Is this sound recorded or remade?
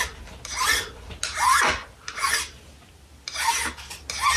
recorded